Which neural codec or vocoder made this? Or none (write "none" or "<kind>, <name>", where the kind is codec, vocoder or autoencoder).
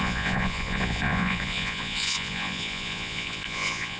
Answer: vocoder, Vocos